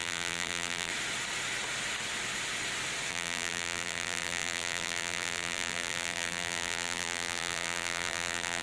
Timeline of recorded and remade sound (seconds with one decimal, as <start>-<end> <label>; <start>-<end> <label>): 0.0-0.9 remade; 0.9-3.1 recorded; 3.1-8.6 remade